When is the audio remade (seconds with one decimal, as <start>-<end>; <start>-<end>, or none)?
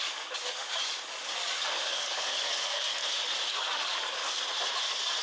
0.0-3.0; 3.5-4.2